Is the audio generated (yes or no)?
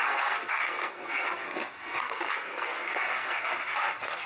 yes